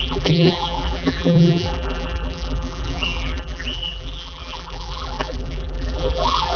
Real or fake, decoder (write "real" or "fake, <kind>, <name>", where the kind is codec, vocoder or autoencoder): fake, vocoder, BigVGAN v2